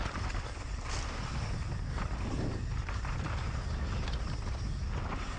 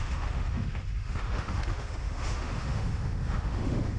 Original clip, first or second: first